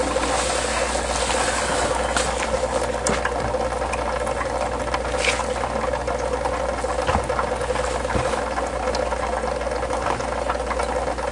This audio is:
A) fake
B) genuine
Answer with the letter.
B